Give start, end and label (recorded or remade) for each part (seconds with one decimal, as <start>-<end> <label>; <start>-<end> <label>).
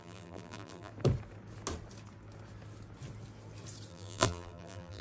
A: 0.0-0.9 remade; 0.9-3.9 recorded; 3.9-5.0 remade